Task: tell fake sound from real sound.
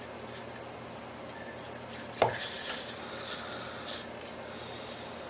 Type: real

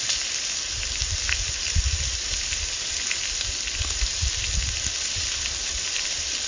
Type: real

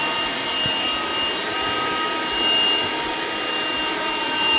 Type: real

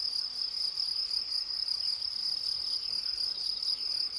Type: real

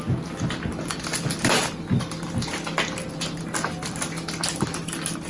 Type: real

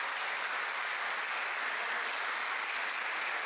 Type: real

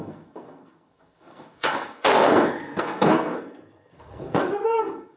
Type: fake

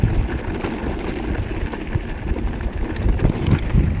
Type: real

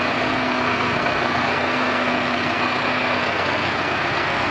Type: fake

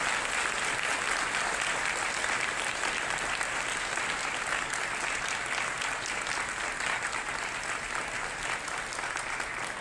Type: real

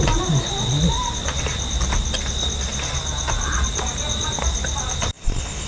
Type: real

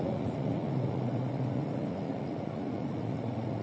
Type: fake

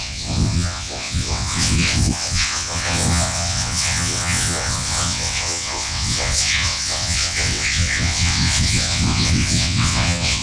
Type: fake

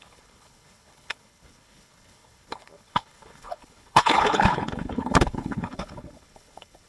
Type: fake